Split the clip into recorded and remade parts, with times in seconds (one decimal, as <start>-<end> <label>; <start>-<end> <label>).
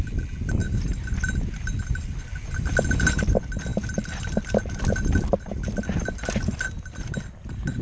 0.0-7.8 recorded